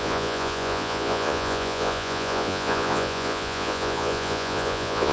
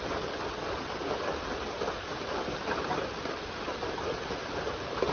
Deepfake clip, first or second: first